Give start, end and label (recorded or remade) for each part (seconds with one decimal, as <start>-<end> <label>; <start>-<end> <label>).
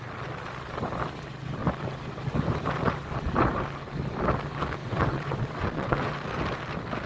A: 0.0-4.8 recorded; 4.8-6.1 remade; 6.1-7.1 recorded